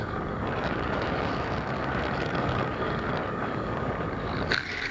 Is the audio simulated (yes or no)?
yes